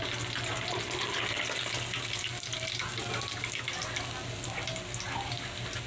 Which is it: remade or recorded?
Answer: recorded